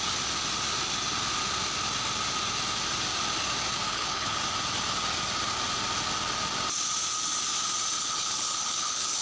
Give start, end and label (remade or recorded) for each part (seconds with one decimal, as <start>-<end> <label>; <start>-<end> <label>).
0.0-3.9 recorded; 3.9-4.4 remade; 4.4-8.0 recorded; 8.0-9.2 remade